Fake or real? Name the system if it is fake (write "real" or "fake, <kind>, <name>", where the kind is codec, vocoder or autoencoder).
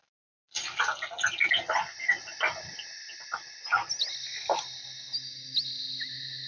real